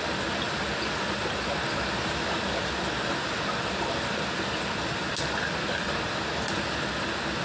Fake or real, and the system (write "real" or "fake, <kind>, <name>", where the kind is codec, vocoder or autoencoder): real